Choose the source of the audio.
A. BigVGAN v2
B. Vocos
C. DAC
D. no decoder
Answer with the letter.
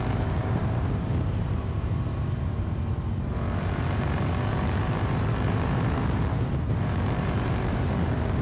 A